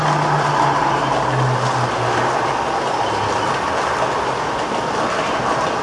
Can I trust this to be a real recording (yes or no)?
yes